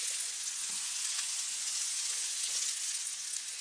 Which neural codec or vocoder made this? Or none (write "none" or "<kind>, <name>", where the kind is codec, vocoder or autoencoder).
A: vocoder, Vocos